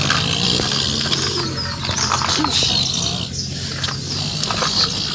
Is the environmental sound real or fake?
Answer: real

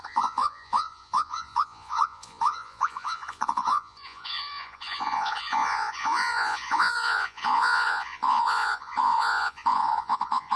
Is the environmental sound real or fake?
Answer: fake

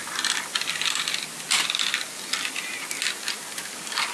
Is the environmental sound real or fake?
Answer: real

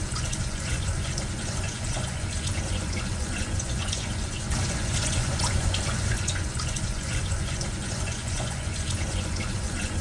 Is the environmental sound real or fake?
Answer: fake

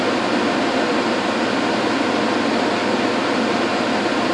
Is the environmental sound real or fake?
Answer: real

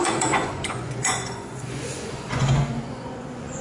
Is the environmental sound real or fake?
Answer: fake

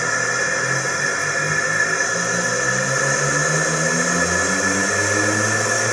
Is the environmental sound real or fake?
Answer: real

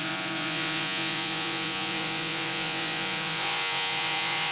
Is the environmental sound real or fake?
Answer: fake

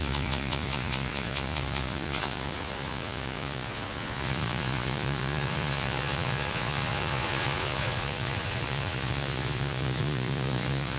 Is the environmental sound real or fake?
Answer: fake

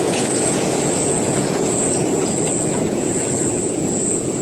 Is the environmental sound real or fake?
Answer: fake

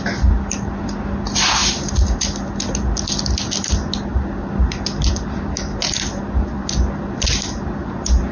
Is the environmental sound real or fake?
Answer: real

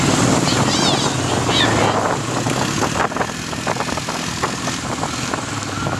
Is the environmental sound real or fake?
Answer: real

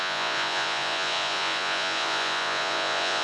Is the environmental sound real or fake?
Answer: fake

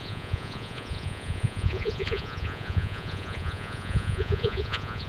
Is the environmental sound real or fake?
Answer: fake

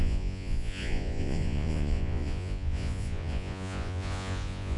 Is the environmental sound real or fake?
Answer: fake